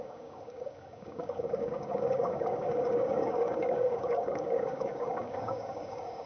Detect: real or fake fake